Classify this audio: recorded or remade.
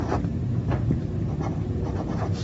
remade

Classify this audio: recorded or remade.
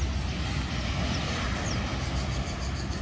recorded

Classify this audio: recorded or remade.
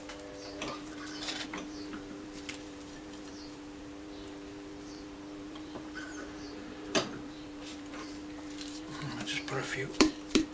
remade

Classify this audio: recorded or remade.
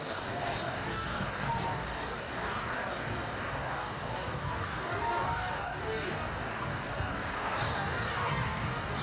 remade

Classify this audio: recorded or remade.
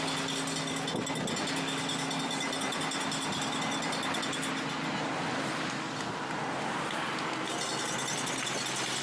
recorded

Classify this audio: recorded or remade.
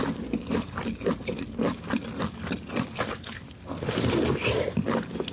recorded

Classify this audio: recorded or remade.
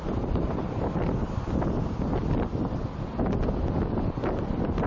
recorded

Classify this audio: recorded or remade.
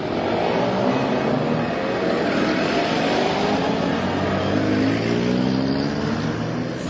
recorded